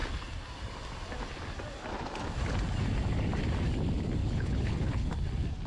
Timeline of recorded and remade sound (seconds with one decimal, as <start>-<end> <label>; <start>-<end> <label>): 0.0-4.2 recorded; 4.2-5.1 remade; 5.1-5.7 recorded